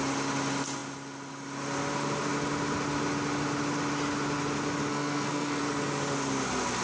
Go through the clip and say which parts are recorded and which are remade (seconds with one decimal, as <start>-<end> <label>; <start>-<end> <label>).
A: 0.0-4.9 recorded; 4.9-5.6 remade; 5.6-6.8 recorded